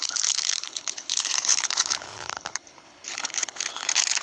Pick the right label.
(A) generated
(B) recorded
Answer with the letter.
A